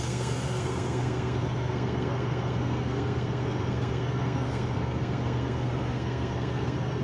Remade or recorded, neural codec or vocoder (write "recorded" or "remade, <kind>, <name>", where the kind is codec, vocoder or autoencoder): remade, codec, SNAC